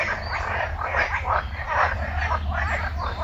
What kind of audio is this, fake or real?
real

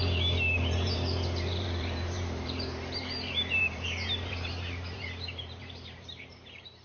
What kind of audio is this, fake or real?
fake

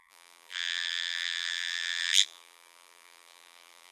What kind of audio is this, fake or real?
fake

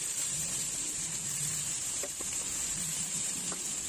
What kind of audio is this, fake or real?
fake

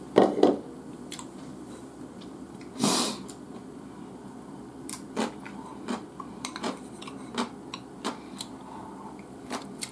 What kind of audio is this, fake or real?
fake